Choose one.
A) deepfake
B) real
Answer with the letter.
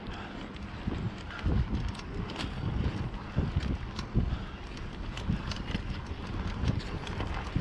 B